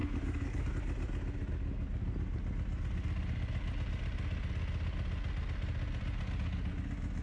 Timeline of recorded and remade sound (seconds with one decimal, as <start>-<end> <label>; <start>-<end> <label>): 0.0-0.7 remade; 0.7-7.2 recorded